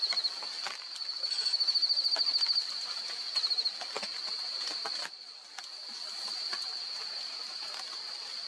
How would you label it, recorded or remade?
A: recorded